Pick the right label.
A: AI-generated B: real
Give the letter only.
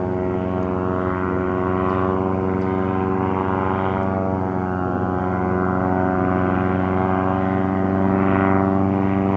B